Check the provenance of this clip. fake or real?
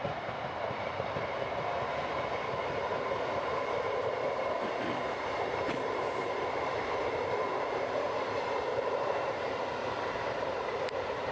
fake